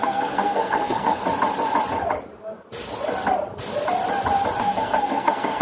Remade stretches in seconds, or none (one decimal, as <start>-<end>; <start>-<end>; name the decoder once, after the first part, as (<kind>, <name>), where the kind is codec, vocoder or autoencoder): 0.0-1.2 (codec, SNAC); 4.6-5.6